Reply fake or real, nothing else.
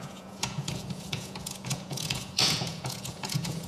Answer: fake